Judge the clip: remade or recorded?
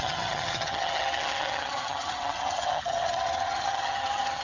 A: remade